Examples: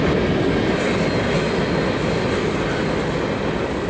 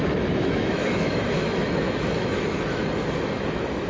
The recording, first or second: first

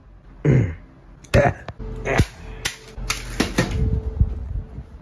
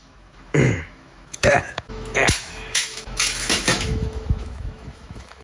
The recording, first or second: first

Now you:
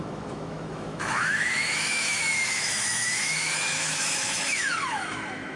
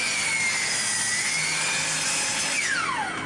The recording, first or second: second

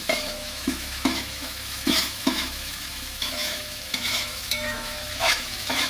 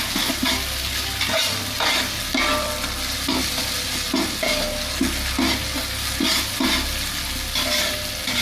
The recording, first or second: second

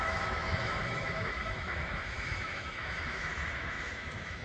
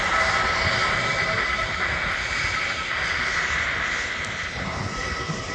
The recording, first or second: second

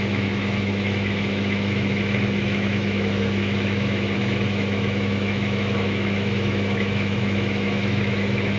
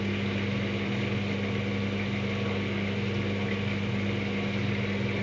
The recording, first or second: second